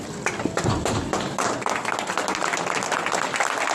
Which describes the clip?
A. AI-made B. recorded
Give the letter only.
B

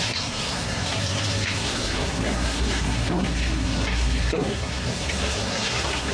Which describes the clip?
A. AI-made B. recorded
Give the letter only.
A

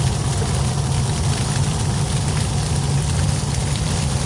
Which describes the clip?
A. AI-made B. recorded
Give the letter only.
B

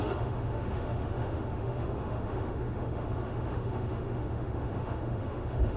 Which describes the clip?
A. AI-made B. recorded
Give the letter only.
A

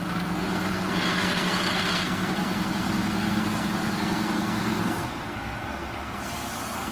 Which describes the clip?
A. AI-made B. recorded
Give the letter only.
A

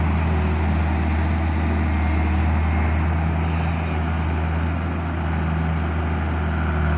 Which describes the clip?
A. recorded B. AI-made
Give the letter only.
A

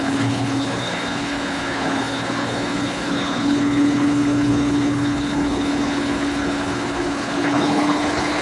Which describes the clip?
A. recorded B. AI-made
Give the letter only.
B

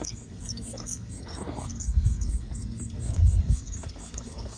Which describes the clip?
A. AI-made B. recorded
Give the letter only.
A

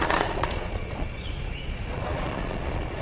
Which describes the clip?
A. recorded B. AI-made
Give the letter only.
B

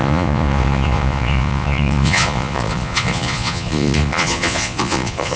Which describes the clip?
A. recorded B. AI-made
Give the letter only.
B